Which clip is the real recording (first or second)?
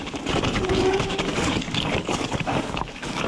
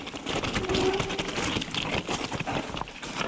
second